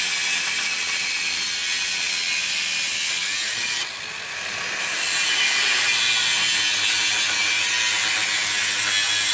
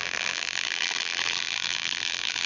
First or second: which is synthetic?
second